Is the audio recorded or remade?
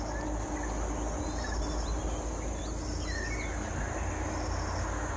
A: recorded